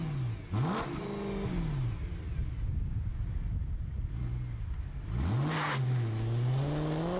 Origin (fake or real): real